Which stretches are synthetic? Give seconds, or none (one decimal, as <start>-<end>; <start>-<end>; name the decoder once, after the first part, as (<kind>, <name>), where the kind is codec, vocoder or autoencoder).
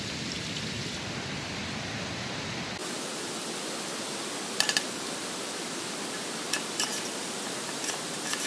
none